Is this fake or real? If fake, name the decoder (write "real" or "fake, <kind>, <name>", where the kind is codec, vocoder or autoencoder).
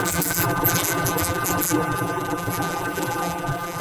fake, vocoder, BigVGAN v2